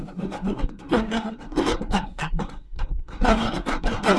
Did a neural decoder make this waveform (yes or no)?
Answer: yes